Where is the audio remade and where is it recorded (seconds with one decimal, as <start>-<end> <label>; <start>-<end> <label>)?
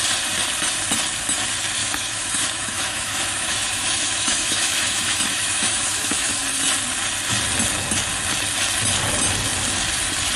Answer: 0.0-1.8 recorded; 1.8-6.3 remade; 6.3-10.4 recorded